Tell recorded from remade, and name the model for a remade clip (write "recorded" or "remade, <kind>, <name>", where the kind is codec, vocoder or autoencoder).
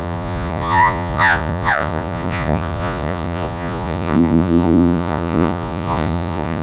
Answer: remade, vocoder, Vocos